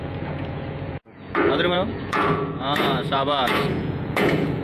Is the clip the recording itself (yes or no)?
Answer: no